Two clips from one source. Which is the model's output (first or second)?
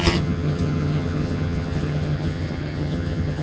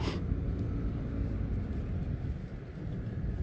first